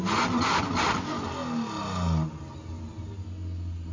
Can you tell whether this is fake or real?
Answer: real